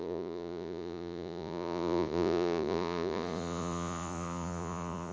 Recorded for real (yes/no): no